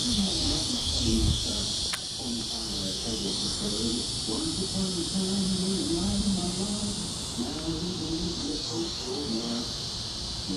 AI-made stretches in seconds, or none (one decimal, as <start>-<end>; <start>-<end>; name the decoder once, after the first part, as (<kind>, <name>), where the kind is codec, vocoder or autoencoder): 0.0-1.4 (codec, DAC); 2.5-3.7; 8.4-9.6